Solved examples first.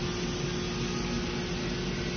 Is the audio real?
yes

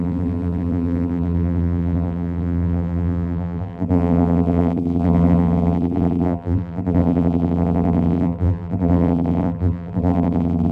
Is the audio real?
no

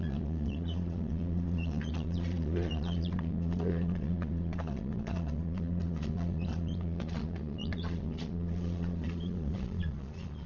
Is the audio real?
no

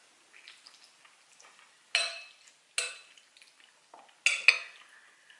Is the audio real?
yes